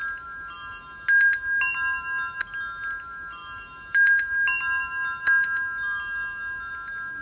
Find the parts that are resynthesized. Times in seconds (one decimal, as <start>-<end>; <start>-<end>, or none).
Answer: none